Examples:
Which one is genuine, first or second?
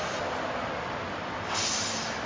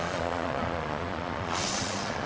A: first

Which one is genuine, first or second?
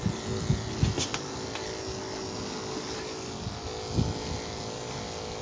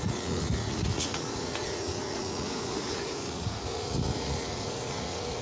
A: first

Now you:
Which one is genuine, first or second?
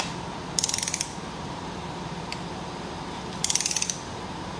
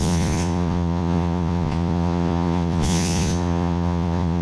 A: first